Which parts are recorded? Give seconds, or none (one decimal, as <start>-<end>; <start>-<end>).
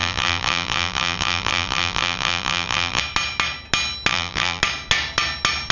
3.0-4.1; 4.6-5.7